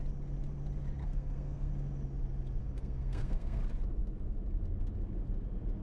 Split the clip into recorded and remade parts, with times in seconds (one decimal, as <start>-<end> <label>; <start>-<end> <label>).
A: 0.0-1.0 recorded; 1.0-1.7 remade; 1.7-2.6 recorded; 2.6-3.6 remade; 3.6-5.8 recorded

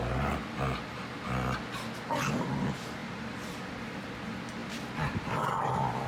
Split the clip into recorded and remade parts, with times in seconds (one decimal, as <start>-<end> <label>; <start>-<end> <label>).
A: 0.0-3.0 recorded; 3.0-3.9 remade; 3.9-4.6 recorded; 4.6-5.3 remade; 5.3-6.1 recorded